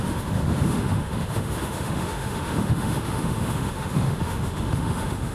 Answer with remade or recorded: remade